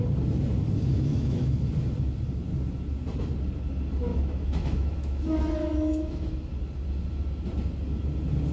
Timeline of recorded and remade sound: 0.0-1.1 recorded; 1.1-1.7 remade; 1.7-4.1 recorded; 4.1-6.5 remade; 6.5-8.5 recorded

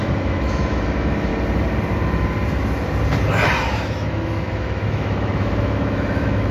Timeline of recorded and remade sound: 0.0-1.3 remade; 1.3-3.6 recorded; 3.6-6.5 remade

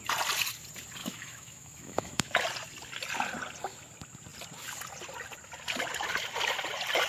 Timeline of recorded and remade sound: 0.0-1.0 recorded; 1.0-2.4 remade; 2.4-7.1 recorded

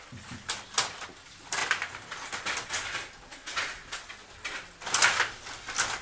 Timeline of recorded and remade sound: 0.0-6.0 recorded

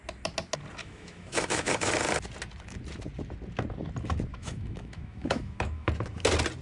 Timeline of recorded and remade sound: 0.0-0.8 recorded; 0.8-1.9 remade; 1.9-4.3 recorded; 4.3-5.9 remade; 5.9-6.6 recorded